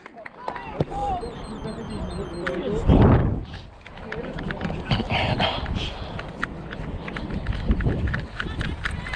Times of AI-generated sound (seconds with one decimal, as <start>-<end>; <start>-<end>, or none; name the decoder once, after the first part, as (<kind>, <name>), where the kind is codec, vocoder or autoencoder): none